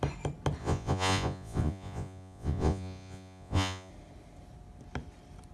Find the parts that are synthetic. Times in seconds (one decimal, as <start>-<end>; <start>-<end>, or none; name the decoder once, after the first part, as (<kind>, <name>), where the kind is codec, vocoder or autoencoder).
0.6-3.9 (vocoder, Vocos)